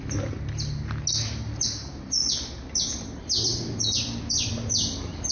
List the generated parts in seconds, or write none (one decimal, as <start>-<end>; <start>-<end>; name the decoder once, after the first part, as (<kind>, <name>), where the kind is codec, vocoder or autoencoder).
none